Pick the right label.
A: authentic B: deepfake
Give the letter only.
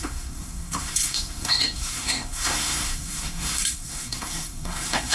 B